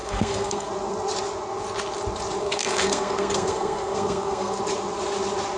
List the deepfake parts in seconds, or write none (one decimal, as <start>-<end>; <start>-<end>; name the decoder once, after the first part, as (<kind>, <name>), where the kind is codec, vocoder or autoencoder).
0.0-0.7 (codec, SNAC); 2.4-4.6